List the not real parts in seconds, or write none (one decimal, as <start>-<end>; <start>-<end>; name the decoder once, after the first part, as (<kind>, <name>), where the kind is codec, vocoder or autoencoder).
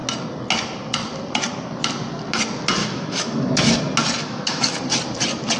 2.8-3.8 (autoencoder, DAC-VAE); 4.2-4.8